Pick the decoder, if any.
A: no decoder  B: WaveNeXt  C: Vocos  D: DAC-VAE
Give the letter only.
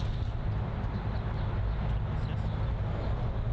A